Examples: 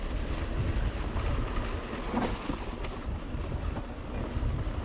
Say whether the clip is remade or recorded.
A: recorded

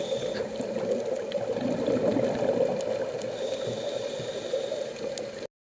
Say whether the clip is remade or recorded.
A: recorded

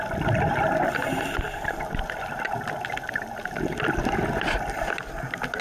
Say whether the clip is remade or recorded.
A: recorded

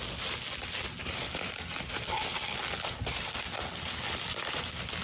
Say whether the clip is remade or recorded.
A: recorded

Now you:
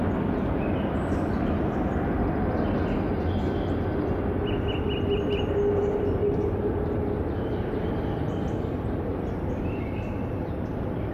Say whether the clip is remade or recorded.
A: recorded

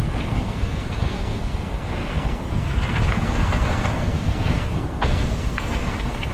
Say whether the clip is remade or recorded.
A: remade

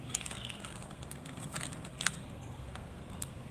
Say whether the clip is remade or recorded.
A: remade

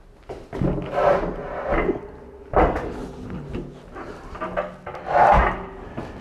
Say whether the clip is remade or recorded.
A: recorded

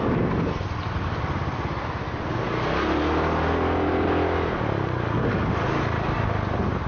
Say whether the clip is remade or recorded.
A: recorded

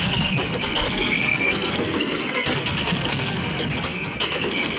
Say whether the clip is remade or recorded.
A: remade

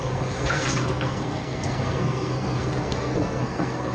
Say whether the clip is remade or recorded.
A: remade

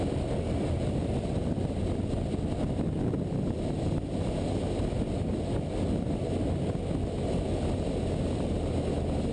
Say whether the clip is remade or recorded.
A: recorded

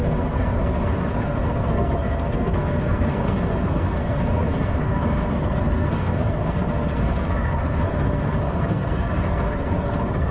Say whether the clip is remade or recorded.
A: remade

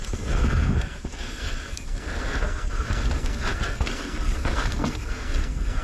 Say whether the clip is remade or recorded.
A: remade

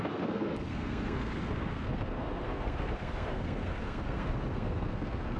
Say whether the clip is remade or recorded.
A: remade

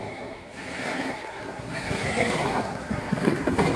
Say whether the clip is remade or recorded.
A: remade